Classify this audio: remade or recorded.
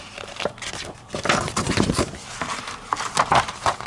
recorded